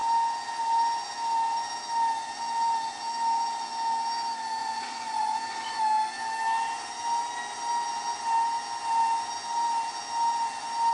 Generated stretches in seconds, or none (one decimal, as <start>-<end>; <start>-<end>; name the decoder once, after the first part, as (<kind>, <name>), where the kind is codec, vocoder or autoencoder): 4.6-5.8 (vocoder, Vocos)